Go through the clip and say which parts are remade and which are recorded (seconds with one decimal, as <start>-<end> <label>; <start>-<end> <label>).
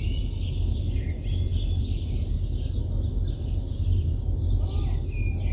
0.0-5.5 recorded